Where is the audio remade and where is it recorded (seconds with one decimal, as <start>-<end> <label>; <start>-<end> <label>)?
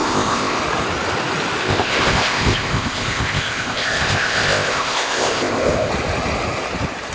0.0-0.6 remade; 0.6-1.6 recorded; 1.6-5.9 remade; 5.9-7.1 recorded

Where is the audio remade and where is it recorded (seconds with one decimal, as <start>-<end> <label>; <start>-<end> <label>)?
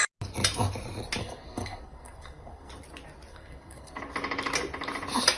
0.0-1.2 recorded; 1.2-2.7 remade; 2.7-3.3 recorded; 3.3-4.0 remade; 4.0-5.4 recorded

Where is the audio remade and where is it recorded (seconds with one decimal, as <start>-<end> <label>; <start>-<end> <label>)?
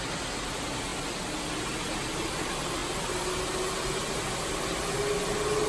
0.0-5.7 recorded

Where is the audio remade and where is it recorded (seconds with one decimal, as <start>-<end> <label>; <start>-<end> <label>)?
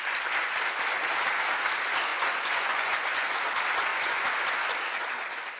0.0-2.1 recorded; 2.1-3.3 remade; 3.3-3.9 recorded; 3.9-4.4 remade; 4.4-5.6 recorded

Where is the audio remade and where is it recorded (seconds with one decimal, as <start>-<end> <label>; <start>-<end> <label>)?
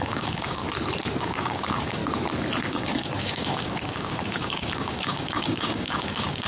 0.0-0.6 remade; 0.6-1.2 recorded; 1.2-2.0 remade; 2.0-2.6 recorded; 2.6-6.5 remade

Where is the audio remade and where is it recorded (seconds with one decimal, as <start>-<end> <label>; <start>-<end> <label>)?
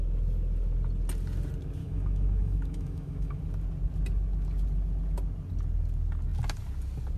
0.0-1.8 recorded; 1.8-3.4 remade; 3.4-7.2 recorded